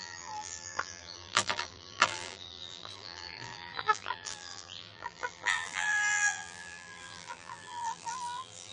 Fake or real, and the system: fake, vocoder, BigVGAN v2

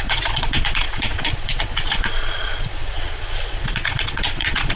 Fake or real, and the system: fake, vocoder, Vocos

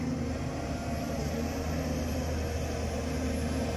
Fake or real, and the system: real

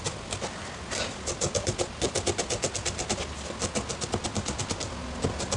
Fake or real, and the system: real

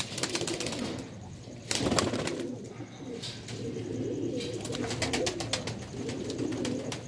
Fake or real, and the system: real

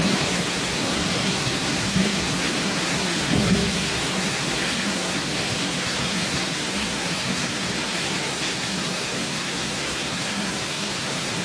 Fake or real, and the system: fake, codec, SNAC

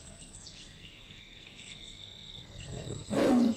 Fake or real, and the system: fake, codec, SNAC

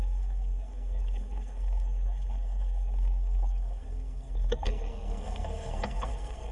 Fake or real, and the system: fake, codec, SNAC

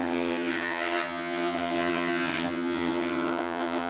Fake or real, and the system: fake, vocoder, HiFi-GAN